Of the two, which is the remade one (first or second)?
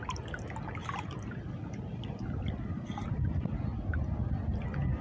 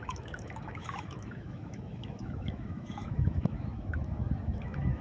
second